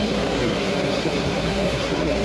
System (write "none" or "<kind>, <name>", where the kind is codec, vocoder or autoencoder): codec, SNAC